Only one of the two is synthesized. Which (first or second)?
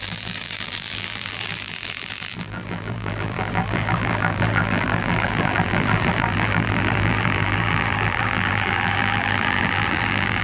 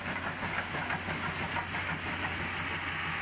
first